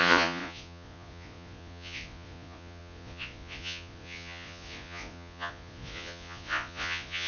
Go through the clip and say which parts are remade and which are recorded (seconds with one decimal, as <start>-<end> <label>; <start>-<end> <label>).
0.0-7.3 remade